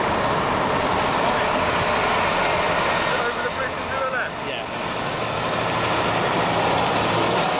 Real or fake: real